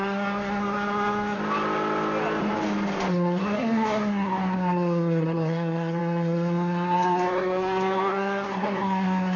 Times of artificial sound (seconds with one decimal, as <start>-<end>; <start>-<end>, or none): 0.0-1.4; 3.1-9.4